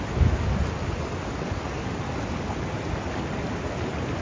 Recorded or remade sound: recorded